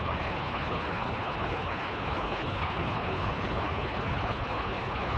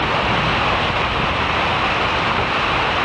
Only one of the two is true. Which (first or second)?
second